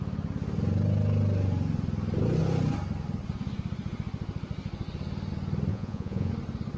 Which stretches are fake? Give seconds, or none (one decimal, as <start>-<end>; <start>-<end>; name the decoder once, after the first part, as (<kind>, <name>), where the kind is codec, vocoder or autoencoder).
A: 5.7-6.3 (vocoder, Vocos)